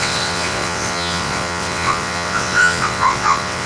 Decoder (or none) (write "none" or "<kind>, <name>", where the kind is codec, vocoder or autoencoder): vocoder, WaveNeXt